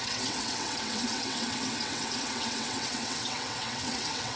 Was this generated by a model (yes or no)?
yes